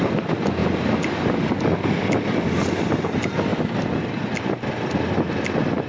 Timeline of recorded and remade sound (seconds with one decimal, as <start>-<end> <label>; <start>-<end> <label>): 0.0-5.9 recorded